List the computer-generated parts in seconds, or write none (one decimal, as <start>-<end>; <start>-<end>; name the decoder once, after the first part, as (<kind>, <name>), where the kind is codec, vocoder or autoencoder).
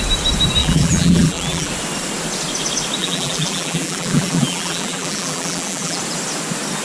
0.6-1.7 (vocoder, BigVGAN v2); 3.0-6.0